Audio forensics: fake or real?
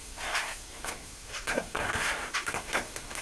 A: fake